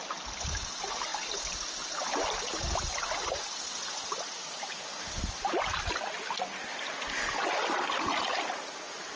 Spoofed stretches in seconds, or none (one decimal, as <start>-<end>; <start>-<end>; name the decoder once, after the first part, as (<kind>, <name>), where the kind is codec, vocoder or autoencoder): none